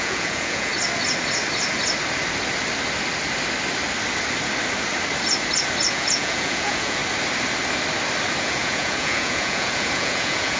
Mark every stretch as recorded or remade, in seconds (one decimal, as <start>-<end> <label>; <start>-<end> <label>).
0.0-0.7 remade; 0.7-5.9 recorded; 5.9-7.0 remade; 7.0-8.4 recorded; 8.4-10.6 remade